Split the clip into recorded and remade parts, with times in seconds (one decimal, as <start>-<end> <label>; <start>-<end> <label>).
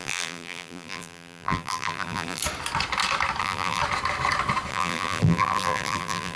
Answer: 0.0-2.4 remade; 2.4-3.4 recorded; 3.4-3.8 remade; 3.8-4.7 recorded; 4.7-6.4 remade